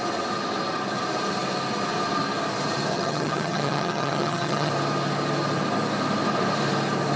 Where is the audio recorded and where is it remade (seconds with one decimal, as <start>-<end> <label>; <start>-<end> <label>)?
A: 0.0-2.9 recorded; 2.9-4.7 remade; 4.7-7.2 recorded